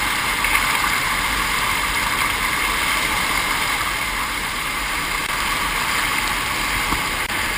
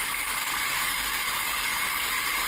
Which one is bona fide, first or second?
first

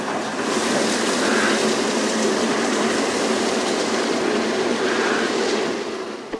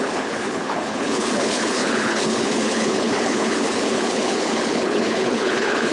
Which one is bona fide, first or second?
first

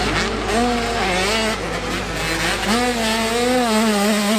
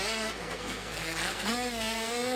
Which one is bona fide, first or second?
first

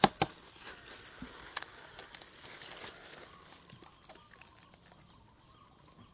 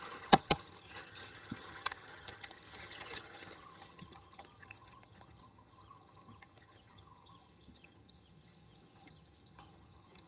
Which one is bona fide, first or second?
first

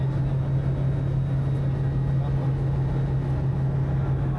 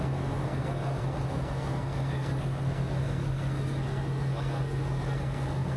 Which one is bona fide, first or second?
first